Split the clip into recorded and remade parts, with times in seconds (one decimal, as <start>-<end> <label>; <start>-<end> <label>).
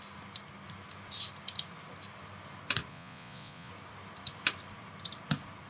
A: 0.0-2.9 recorded; 2.9-3.7 remade; 3.7-5.7 recorded